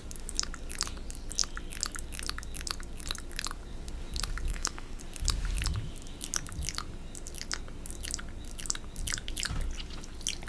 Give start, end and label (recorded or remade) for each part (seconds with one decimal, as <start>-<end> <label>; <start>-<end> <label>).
0.0-4.5 recorded; 4.5-5.0 remade; 5.0-10.5 recorded

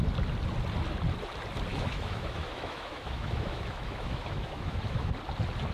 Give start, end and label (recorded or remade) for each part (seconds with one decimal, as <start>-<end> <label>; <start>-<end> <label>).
0.0-1.7 recorded; 1.7-5.1 remade; 5.1-5.7 recorded

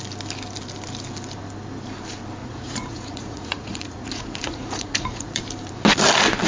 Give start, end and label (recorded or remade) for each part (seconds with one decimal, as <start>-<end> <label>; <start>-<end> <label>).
0.0-2.4 recorded; 2.4-5.4 remade; 5.4-6.5 recorded